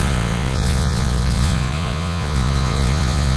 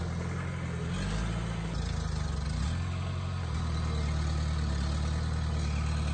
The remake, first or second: first